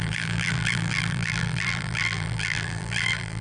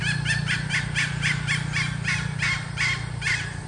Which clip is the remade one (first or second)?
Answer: first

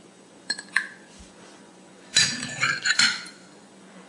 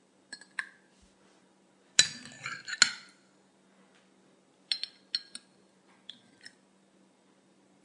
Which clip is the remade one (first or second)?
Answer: first